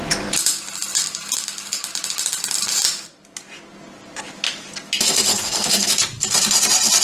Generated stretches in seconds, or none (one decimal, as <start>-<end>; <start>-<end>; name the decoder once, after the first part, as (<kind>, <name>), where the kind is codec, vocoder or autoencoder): 5.3-5.9 (codec, SNAC)